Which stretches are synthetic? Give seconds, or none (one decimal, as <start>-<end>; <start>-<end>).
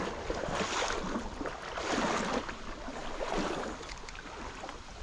none